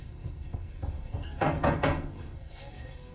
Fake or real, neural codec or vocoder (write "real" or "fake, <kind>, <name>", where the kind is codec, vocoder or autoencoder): fake, codec, SNAC